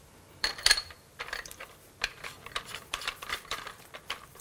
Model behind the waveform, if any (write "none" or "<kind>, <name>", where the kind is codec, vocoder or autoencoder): vocoder, BigVGAN v2